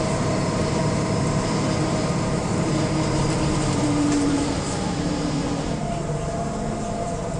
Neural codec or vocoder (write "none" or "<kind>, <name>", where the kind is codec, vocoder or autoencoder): vocoder, BigVGAN v2